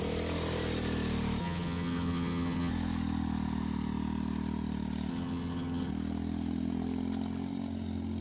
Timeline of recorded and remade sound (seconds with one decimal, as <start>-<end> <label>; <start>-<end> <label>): 0.0-1.4 recorded; 1.4-2.7 remade; 2.7-5.1 recorded; 5.1-5.9 remade; 5.9-8.2 recorded